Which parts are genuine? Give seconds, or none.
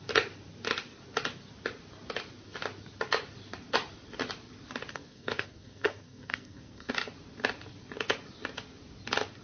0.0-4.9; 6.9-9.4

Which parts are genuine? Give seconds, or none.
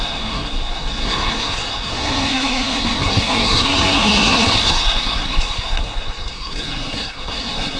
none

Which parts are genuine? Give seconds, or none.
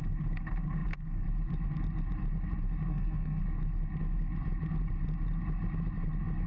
0.0-2.9; 3.4-6.5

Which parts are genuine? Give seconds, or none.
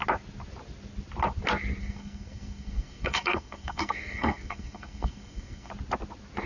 0.0-1.8; 5.7-6.5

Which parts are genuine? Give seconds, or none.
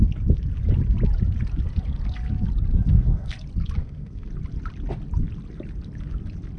0.0-2.7; 3.3-3.8; 4.3-6.6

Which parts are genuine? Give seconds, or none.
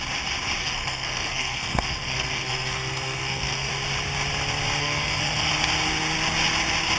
0.0-0.6; 3.7-4.8; 5.5-7.0